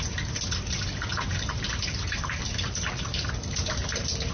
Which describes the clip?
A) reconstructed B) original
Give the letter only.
B